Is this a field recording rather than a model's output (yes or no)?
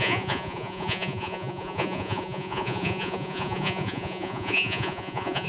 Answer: no